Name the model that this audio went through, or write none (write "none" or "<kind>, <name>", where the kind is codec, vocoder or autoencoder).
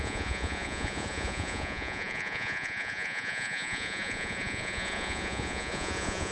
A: vocoder, Vocos